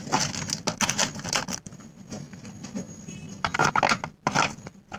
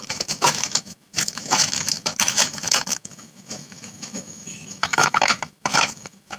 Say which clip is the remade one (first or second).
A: second